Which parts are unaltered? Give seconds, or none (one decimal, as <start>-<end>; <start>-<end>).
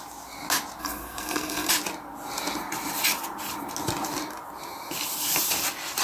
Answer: 0.0-0.8; 1.7-6.0